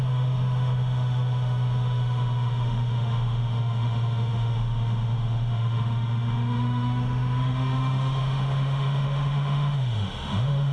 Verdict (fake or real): fake